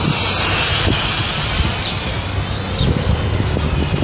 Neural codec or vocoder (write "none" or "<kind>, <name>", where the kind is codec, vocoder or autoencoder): none